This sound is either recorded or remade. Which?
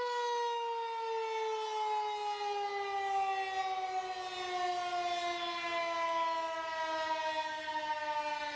recorded